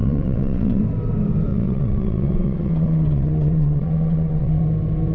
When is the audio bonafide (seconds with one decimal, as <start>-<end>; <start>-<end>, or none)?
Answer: 0.8-1.5; 4.6-5.1